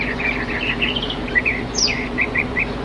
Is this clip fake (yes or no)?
yes